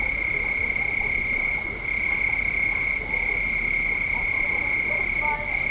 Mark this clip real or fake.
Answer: real